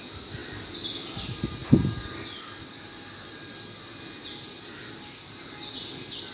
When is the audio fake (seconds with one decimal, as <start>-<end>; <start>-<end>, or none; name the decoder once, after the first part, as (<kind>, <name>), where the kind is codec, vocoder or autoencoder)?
none